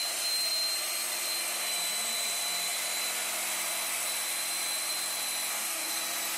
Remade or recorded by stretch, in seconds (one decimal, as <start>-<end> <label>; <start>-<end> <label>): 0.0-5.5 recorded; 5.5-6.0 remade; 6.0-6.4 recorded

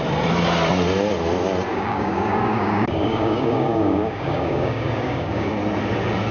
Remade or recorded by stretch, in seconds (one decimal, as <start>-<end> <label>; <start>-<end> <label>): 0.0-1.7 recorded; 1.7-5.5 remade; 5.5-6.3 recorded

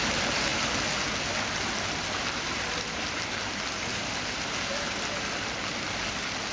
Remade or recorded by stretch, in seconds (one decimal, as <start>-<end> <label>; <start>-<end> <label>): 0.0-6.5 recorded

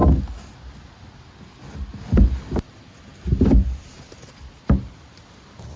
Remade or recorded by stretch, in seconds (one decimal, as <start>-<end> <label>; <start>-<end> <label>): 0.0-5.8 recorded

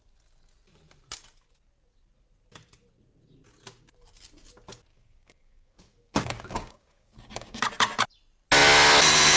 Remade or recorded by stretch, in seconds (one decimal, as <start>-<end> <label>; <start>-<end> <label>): 0.0-4.9 recorded; 4.9-7.6 remade; 7.6-9.4 recorded

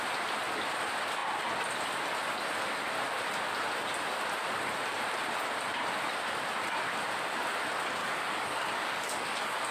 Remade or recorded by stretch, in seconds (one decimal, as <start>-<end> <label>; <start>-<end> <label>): 0.0-8.0 recorded; 8.0-9.7 remade

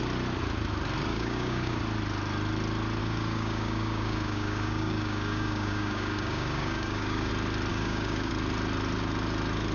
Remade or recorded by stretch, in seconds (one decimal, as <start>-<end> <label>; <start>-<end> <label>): 0.0-1.1 recorded; 1.1-1.8 remade; 1.8-3.0 recorded; 3.0-7.3 remade; 7.3-7.7 recorded; 7.7-8.3 remade; 8.3-9.7 recorded

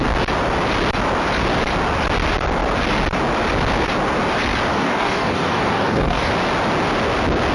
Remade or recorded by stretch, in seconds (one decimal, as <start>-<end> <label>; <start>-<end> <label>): 0.0-4.7 recorded; 4.7-6.3 remade; 6.3-7.5 recorded